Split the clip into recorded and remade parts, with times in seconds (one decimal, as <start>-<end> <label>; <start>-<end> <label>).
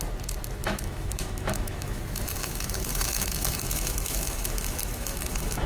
0.0-0.6 recorded; 0.6-2.0 remade; 2.0-2.4 recorded; 2.4-5.7 remade